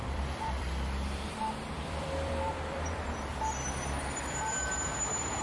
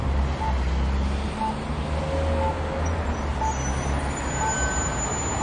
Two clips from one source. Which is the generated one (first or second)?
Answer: first